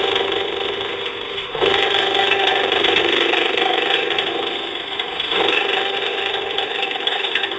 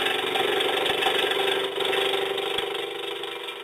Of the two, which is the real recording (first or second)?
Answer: second